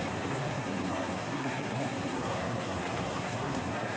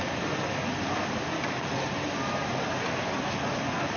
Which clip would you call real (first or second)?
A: second